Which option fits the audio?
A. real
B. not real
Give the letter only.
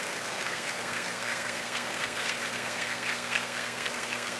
B